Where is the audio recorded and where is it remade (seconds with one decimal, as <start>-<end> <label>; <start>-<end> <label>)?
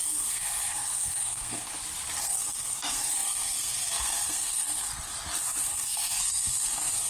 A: 0.0-1.7 remade; 1.7-2.2 recorded; 2.2-4.9 remade; 4.9-5.6 recorded; 5.6-7.1 remade